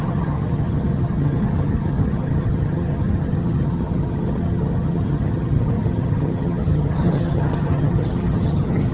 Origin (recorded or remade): remade